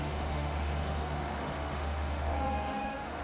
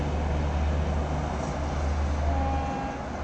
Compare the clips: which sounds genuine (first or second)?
second